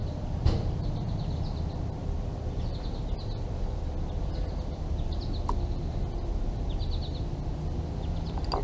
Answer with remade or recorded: recorded